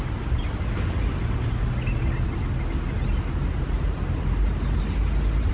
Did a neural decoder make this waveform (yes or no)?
no